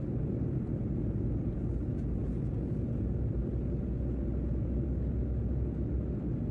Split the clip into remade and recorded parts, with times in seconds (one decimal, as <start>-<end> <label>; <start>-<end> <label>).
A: 0.0-6.5 recorded